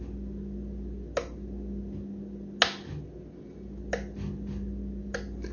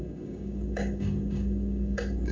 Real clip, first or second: first